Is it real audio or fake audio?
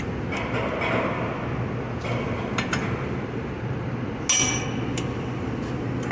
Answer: real